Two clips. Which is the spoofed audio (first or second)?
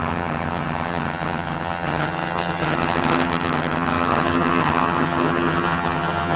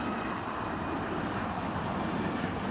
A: first